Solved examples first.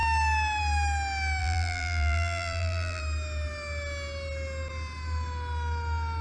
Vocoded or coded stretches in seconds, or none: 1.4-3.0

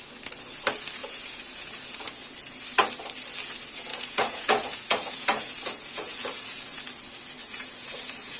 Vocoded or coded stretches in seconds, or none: 1.0-2.1; 3.9-6.8; 7.4-8.4

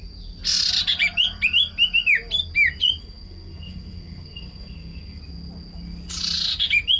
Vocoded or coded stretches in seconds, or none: 3.0-5.2

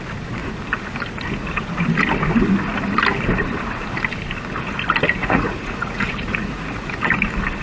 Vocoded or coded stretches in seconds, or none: 5.2-7.1

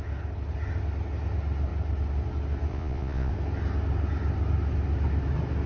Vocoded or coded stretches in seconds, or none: 2.7-3.3